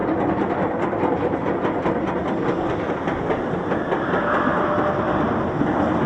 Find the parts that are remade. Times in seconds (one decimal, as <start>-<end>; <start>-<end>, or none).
0.0-2.9